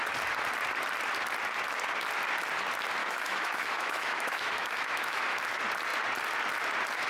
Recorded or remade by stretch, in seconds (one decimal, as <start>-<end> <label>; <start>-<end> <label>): 0.0-3.0 recorded; 3.0-5.4 remade; 5.4-7.1 recorded